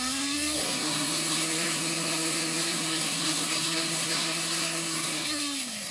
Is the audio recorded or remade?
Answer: remade